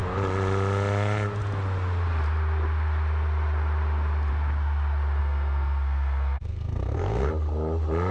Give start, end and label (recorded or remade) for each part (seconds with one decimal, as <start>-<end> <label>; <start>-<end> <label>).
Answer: 0.0-5.2 recorded; 5.2-7.3 remade; 7.3-8.1 recorded

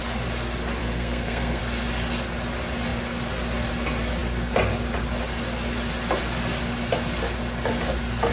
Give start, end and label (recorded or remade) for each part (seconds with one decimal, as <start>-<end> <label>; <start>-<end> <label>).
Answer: 0.0-0.8 recorded; 0.8-1.6 remade; 1.6-8.3 recorded

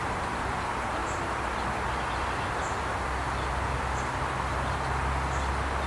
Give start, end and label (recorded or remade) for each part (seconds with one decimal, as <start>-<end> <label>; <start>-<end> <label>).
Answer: 0.0-5.9 recorded

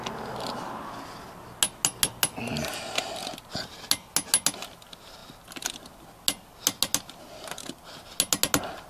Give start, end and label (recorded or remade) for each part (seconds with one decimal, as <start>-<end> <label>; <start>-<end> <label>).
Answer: 0.0-8.9 recorded